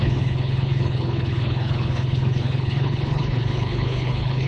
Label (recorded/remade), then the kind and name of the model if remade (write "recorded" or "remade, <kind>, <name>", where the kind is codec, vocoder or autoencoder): remade, codec, HILCodec